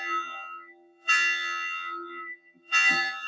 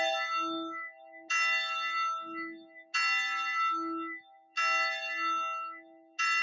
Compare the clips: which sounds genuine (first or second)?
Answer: second